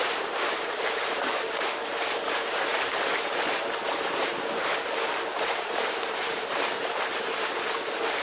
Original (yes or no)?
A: no